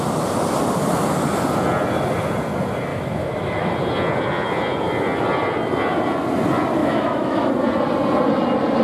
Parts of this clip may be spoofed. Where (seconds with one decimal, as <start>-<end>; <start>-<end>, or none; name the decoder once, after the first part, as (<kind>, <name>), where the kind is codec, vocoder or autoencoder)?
2.9-3.7 (autoencoder, DAC-VAE); 6.8-7.5